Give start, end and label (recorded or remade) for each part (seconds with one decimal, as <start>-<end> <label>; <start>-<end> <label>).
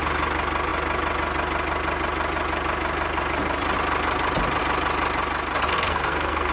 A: 0.0-5.7 recorded; 5.7-6.5 remade